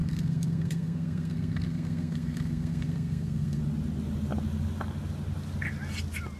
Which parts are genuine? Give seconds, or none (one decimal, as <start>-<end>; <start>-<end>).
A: 3.6-6.4